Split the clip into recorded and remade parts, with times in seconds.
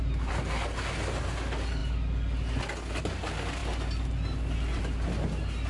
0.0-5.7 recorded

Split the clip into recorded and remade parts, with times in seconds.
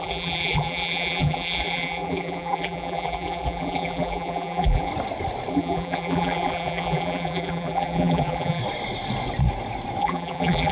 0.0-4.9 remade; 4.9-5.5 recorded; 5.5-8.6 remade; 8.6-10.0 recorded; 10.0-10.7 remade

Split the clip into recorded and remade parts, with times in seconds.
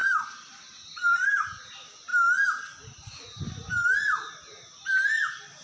0.0-1.7 remade; 1.7-5.6 recorded